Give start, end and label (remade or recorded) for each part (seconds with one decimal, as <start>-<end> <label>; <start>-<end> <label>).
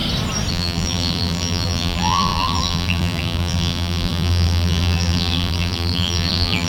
0.0-0.5 recorded; 0.5-6.7 remade